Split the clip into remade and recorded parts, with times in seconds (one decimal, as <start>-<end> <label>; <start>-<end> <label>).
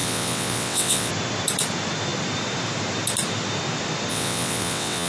0.0-1.1 remade; 1.1-4.1 recorded; 4.1-5.1 remade